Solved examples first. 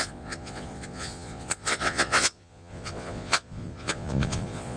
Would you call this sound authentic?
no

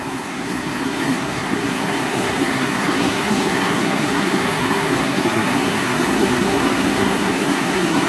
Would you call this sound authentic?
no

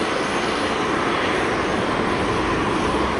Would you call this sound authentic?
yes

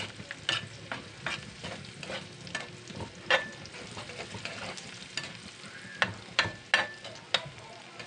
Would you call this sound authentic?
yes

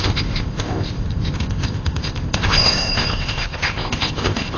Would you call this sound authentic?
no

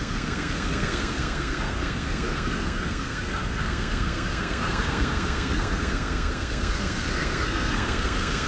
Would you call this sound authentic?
no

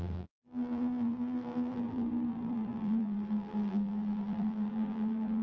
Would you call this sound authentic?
no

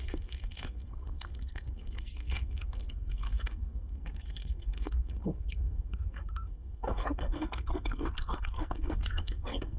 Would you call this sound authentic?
no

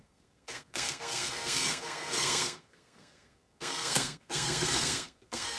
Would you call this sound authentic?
no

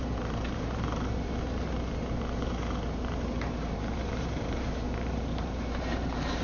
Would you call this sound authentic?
no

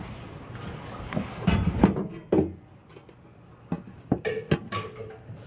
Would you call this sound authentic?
yes